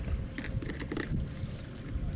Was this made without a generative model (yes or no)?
yes